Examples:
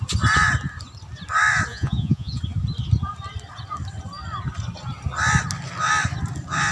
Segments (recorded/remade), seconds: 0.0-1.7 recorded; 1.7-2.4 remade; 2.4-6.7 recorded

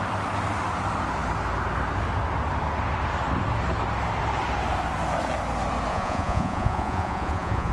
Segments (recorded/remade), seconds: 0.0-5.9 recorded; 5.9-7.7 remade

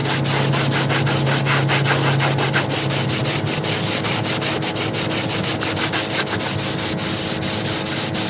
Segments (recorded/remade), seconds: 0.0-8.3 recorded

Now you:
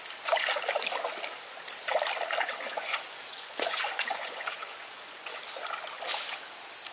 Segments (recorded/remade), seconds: 0.0-2.7 recorded; 2.7-5.4 remade; 5.4-6.9 recorded

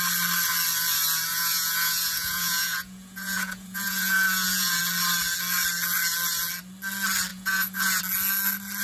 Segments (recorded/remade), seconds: 0.0-1.3 recorded; 1.3-4.8 remade; 4.8-7.3 recorded; 7.3-8.0 remade; 8.0-8.8 recorded